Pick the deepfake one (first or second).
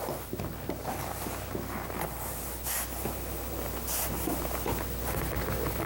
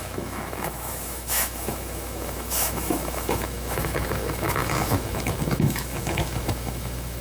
second